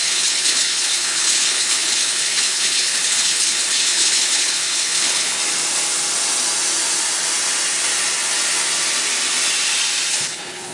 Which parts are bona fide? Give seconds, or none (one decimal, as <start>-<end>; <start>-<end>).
5.4-10.1